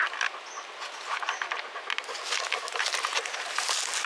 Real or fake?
real